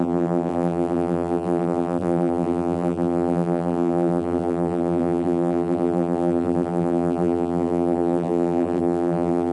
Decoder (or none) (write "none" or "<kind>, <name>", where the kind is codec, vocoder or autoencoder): vocoder, BigVGAN v2